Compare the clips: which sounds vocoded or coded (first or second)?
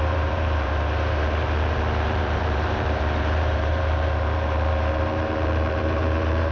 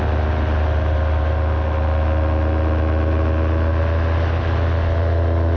first